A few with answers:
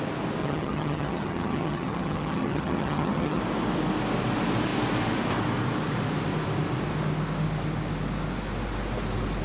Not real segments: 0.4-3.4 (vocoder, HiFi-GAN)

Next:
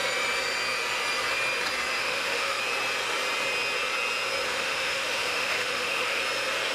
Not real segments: 2.0-2.6 (autoencoder, DAC-VAE); 4.5-6.2

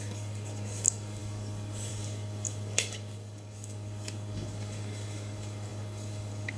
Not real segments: 0.0-6.6 (codec, DAC)

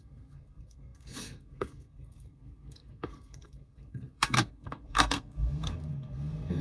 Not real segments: 0.0-6.6 (codec, SNAC)

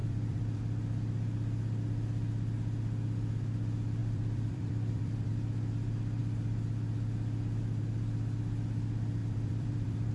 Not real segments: 0.0-0.6 (vocoder, BigVGAN v2); 4.0-5.3; 9.2-10.1